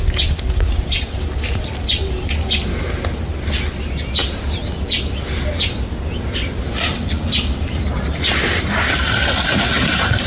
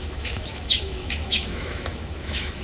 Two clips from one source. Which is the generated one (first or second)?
second